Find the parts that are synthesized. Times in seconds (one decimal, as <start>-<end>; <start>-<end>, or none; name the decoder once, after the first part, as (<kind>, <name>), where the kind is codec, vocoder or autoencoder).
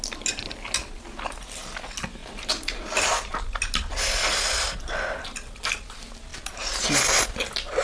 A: 2.2-3.3 (vocoder, BigVGAN v2)